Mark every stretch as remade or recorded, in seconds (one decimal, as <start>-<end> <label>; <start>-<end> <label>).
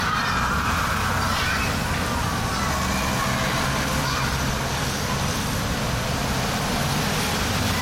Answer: 0.0-7.8 recorded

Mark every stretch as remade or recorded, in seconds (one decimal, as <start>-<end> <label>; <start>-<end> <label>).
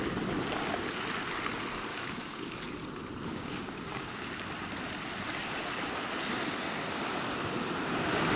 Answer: 0.0-1.9 recorded; 1.9-2.5 remade; 2.5-3.3 recorded; 3.3-4.3 remade; 4.3-8.4 recorded